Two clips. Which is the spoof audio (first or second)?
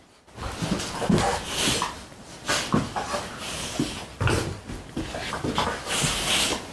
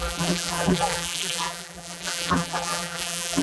second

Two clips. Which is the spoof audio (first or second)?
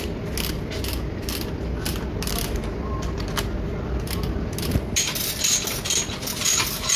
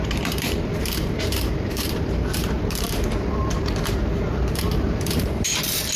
second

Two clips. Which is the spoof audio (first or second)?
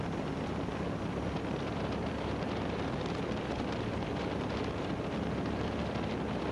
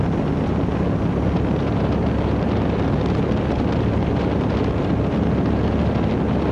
first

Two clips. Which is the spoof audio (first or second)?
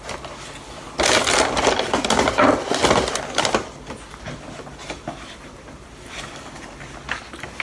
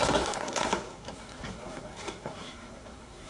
second